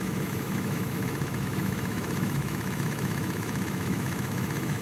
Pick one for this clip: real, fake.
fake